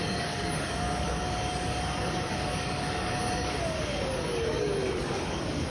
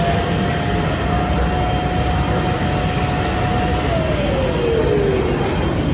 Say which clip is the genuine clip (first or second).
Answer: second